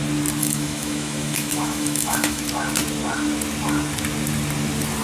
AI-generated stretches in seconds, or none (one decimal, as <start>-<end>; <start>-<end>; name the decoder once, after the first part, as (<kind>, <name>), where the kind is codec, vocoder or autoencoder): 0.4-2.4 (autoencoder, DAC-VAE)